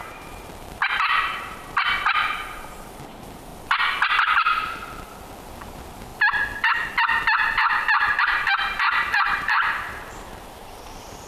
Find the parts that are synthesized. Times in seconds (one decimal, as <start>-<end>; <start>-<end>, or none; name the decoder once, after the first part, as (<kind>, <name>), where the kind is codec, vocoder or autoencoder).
0.0-3.5 (vocoder, BigVGAN v2); 5.4-6.1; 8.2-11.3